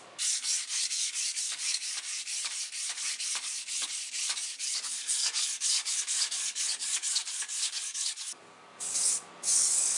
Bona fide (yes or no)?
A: no